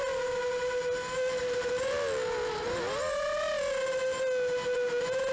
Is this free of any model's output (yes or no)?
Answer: yes